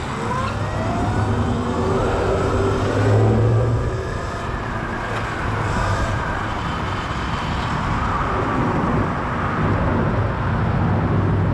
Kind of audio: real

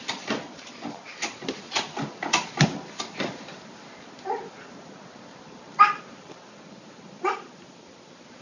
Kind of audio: fake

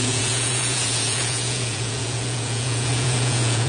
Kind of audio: fake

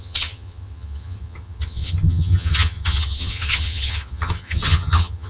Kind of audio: fake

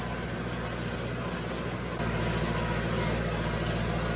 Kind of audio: real